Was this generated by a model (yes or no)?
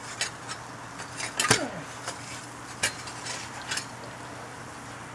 no